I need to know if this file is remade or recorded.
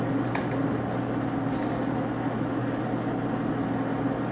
recorded